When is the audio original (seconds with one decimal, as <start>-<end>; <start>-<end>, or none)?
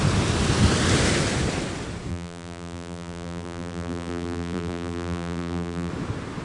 0.0-2.1; 5.9-6.4